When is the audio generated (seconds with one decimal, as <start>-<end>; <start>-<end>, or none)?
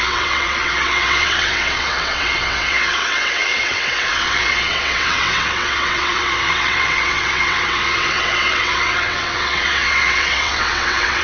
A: 0.0-11.2